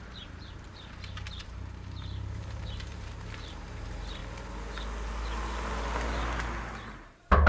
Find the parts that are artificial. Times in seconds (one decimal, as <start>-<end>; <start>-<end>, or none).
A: 0.0-4.2; 6.6-7.5